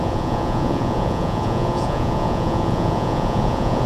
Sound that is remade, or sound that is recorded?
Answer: remade